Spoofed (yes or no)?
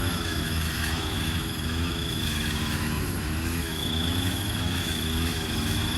yes